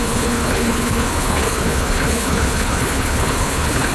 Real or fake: fake